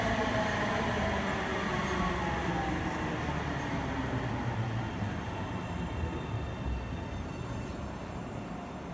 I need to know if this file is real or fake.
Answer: real